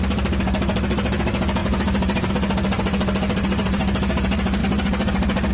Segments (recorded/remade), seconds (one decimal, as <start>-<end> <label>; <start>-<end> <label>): 0.0-1.6 recorded; 1.6-2.3 remade; 2.3-4.6 recorded; 4.6-5.5 remade